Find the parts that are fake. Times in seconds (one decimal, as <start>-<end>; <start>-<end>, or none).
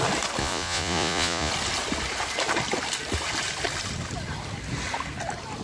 0.4-1.5